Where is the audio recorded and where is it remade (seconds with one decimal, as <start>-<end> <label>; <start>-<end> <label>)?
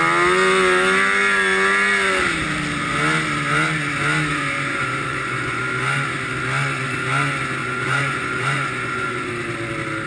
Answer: 0.0-4.3 recorded; 4.3-5.6 remade; 5.6-7.6 recorded; 7.6-9.3 remade; 9.3-10.1 recorded